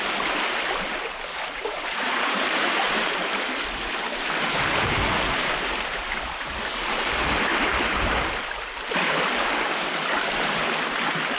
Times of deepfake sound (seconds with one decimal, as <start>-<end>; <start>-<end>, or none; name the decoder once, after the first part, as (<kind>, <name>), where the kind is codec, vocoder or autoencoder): 1.3-3.1 (vocoder, BigVGAN v2)